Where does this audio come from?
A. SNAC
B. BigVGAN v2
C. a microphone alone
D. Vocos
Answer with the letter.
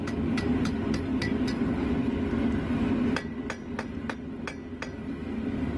C